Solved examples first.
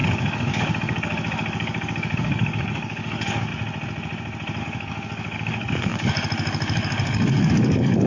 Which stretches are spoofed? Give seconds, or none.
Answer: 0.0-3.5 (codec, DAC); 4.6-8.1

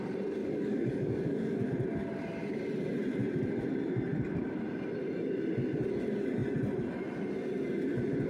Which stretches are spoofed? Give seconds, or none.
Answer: 0.4-1.7 (codec, DAC)

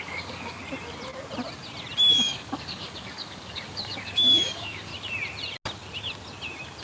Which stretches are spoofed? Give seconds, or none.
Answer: 0.0-0.6 (codec, DAC); 2.1-4.9

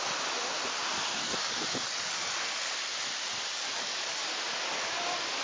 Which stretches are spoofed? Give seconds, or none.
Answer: 1.1-2.7 (codec, DAC); 3.5-4.2